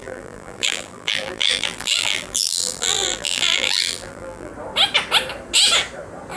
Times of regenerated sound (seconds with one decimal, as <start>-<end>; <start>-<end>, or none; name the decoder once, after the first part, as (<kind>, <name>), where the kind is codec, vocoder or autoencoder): 0.0-4.5 (vocoder, BigVGAN v2)